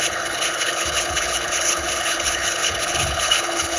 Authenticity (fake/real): fake